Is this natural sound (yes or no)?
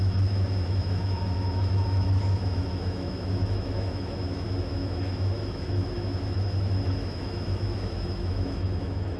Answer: no